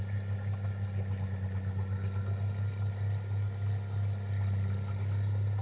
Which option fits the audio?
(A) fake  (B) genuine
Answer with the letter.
B